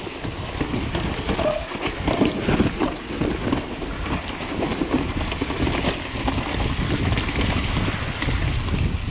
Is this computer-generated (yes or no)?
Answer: no